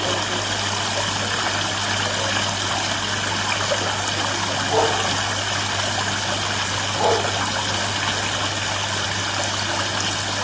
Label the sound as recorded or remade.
recorded